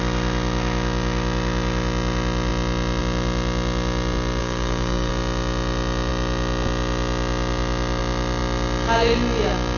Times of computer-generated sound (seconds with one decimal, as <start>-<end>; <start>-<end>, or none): 4.4-5.1